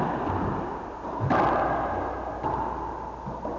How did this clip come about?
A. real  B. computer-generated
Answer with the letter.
A